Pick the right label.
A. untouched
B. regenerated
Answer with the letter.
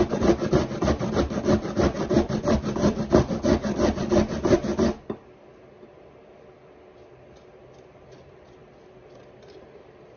B